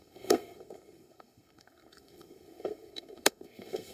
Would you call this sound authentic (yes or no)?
no